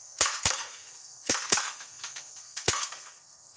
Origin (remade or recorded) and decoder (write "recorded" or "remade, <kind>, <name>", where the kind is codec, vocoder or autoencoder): remade, codec, SNAC